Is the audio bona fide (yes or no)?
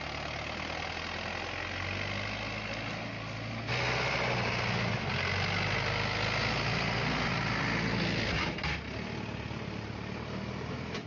yes